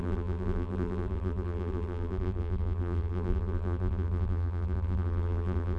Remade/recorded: remade